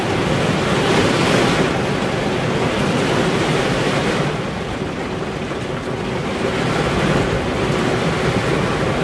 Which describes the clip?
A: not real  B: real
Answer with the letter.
B